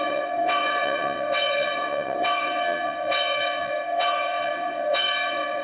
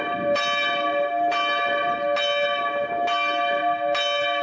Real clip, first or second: second